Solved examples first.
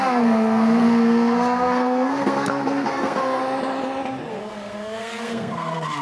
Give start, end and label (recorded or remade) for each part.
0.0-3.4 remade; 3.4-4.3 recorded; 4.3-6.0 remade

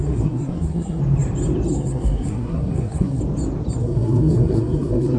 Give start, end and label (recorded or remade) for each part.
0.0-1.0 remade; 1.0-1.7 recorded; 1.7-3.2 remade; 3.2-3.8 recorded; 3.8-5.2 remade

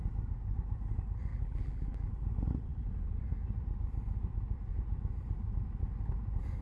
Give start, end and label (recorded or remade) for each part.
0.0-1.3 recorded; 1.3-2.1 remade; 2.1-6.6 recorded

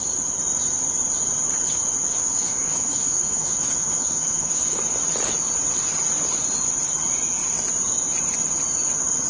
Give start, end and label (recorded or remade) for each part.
0.0-2.1 recorded; 2.1-4.8 remade; 4.8-9.3 recorded

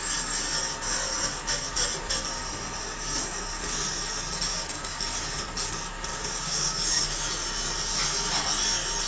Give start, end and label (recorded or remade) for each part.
0.0-4.5 recorded; 4.5-5.0 remade; 5.0-6.1 recorded; 6.1-7.2 remade; 7.2-9.1 recorded

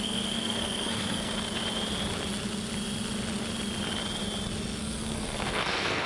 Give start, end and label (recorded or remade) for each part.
0.0-1.3 remade; 1.3-4.8 recorded; 4.8-6.1 remade

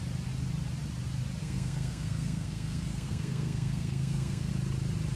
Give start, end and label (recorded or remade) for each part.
0.0-1.4 recorded; 1.4-4.5 remade; 4.5-5.2 recorded

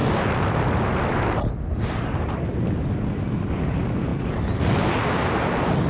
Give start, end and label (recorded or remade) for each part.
0.0-5.9 recorded